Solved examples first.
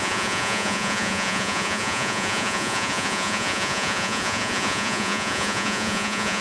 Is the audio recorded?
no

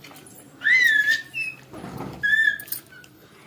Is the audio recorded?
yes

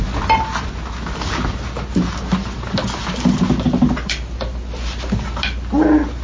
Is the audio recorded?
yes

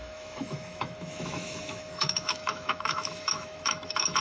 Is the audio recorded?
no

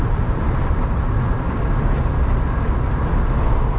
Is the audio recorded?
yes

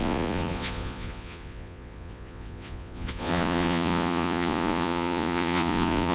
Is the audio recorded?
no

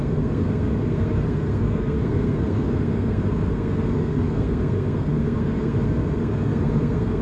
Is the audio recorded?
no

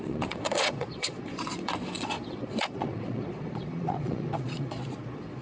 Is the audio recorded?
no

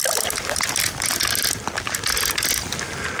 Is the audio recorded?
yes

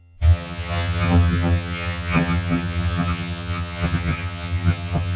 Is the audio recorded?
no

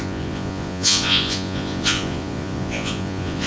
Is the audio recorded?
no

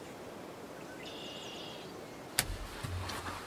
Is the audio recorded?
yes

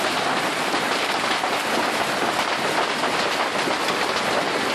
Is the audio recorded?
yes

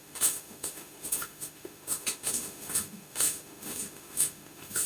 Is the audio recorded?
no